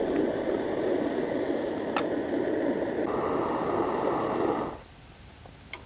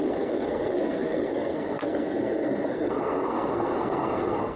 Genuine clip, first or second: first